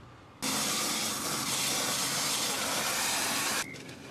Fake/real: real